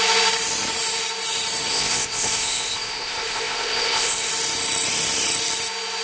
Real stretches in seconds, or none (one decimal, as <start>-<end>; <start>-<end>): 0.0-1.7; 4.3-6.0